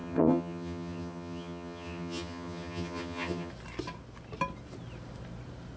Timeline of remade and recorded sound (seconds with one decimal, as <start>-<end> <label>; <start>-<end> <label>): 0.0-3.5 remade; 3.5-5.8 recorded